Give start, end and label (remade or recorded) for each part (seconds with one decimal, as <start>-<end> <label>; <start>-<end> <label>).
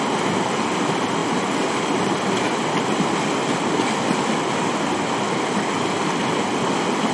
0.0-7.1 recorded